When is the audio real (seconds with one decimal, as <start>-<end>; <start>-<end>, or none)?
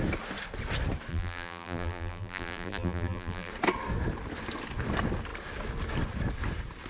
0.0-1.1; 3.5-6.9